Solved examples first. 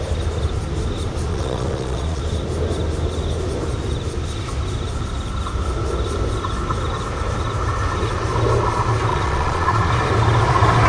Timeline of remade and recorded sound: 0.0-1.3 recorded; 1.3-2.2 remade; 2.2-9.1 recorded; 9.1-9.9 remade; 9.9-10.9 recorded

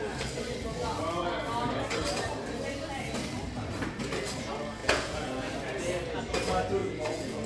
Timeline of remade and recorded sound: 0.0-4.8 recorded; 4.8-5.5 remade; 5.5-6.8 recorded; 6.8-7.5 remade

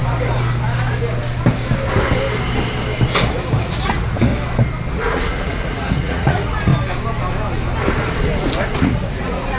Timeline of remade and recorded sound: 0.0-3.6 recorded; 3.6-4.3 remade; 4.3-4.9 recorded; 4.9-6.7 remade; 6.7-8.8 recorded; 8.8-9.6 remade

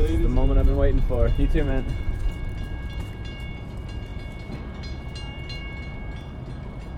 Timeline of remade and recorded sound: 0.0-2.3 remade; 2.3-7.0 recorded

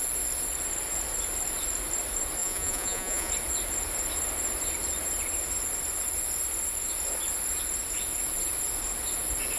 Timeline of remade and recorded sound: 0.0-2.4 recorded; 2.4-3.3 remade; 3.3-9.6 recorded